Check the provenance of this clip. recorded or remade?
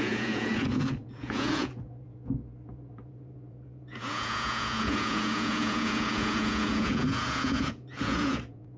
remade